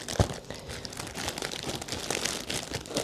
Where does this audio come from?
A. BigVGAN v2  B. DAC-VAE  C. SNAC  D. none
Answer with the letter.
D